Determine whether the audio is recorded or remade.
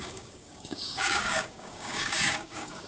remade